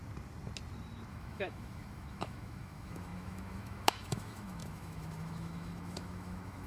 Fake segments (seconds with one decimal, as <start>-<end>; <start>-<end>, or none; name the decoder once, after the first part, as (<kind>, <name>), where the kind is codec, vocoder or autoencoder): 1.1-6.7 (autoencoder, DAC-VAE)